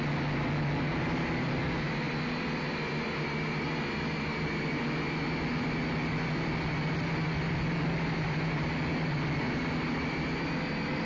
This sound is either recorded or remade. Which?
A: recorded